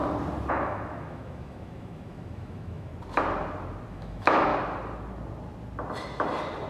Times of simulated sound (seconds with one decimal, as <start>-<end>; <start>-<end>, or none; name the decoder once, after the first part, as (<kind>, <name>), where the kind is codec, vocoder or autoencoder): 0.5-2.9 (autoencoder, DAC-VAE); 3.9-4.5